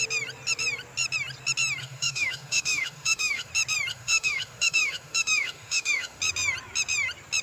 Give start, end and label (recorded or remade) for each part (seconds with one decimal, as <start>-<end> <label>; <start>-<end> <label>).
0.0-1.8 recorded; 1.8-3.5 remade; 3.5-3.9 recorded; 3.9-6.2 remade; 6.2-7.4 recorded